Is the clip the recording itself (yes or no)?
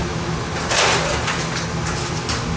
yes